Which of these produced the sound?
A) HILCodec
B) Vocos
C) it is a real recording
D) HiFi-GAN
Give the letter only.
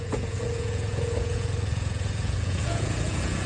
B